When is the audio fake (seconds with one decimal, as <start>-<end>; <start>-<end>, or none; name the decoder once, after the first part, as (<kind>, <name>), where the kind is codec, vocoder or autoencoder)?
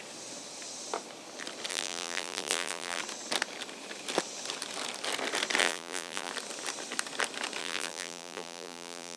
1.7-3.0 (vocoder, BigVGAN v2); 5.6-6.3; 7.6-9.2